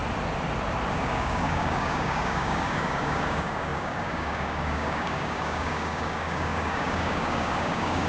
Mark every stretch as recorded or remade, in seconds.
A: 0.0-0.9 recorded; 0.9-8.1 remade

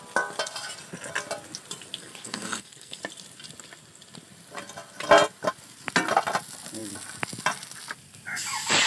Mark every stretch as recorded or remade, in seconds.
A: 0.0-2.0 recorded; 2.0-3.0 remade; 3.0-8.9 recorded

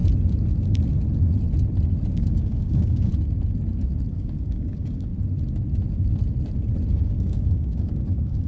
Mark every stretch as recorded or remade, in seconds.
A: 0.0-2.1 recorded; 2.1-3.1 remade; 3.1-4.1 recorded; 4.1-5.1 remade; 5.1-6.9 recorded; 6.9-8.5 remade

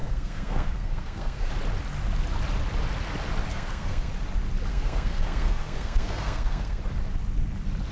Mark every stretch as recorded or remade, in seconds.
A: 0.0-1.5 remade; 1.5-3.5 recorded; 3.5-4.1 remade; 4.1-4.7 recorded; 4.7-6.8 remade; 6.8-7.9 recorded